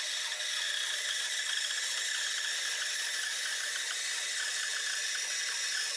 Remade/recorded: recorded